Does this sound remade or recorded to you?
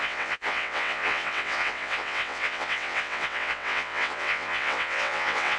remade